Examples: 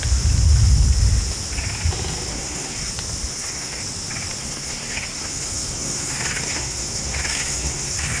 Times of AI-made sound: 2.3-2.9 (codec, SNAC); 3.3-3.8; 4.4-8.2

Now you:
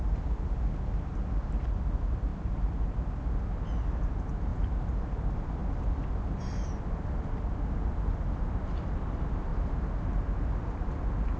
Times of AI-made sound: 0.0-4.5 (vocoder, BigVGAN v2); 5.0-9.5; 10.2-11.4

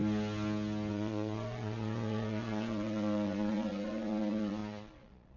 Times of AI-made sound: 0.9-5.4 (vocoder, Vocos)

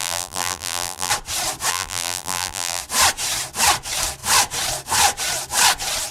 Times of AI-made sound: 0.0-1.1 (vocoder, BigVGAN v2); 1.7-2.8

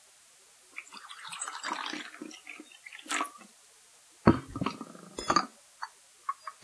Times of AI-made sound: none

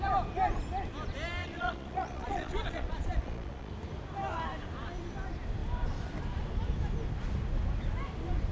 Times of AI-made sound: 1.4-3.7 (vocoder, Vocos)

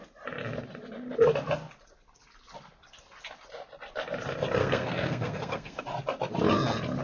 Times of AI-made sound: 4.6-5.8 (codec, SNAC)